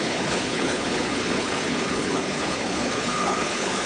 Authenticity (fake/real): fake